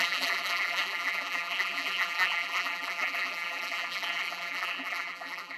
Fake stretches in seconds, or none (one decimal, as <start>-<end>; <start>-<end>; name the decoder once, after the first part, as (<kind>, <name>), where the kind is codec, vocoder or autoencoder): 0.0-5.6 (vocoder, BigVGAN v2)